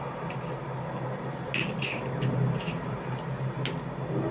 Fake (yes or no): no